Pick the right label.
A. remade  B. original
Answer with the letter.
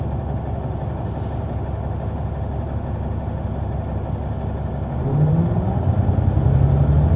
B